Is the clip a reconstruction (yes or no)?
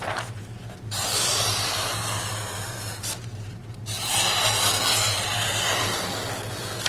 no